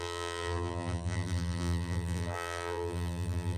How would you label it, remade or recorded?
remade